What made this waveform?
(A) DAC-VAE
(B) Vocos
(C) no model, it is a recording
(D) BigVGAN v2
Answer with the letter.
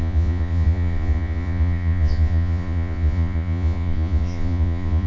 B